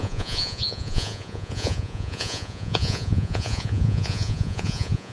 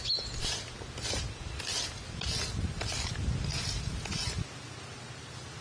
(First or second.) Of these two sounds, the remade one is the first